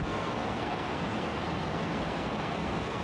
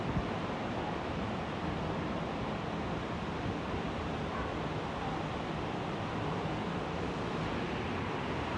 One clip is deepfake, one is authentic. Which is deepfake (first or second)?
first